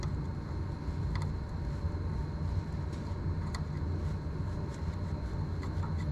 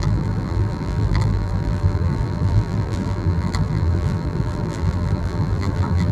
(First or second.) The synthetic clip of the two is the second